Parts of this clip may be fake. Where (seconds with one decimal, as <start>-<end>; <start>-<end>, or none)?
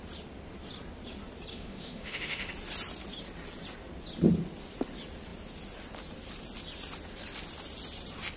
1.5-2.5